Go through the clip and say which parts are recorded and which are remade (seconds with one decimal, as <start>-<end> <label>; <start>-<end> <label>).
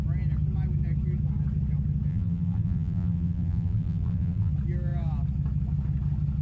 0.0-2.1 recorded; 2.1-4.5 remade; 4.5-6.4 recorded